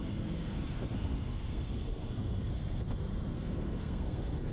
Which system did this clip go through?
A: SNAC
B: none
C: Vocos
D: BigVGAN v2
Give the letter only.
A